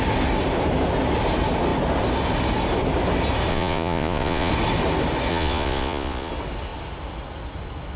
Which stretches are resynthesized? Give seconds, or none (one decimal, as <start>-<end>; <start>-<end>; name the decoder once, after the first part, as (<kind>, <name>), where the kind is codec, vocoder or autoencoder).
3.5-4.5 (vocoder, Vocos); 5.3-6.3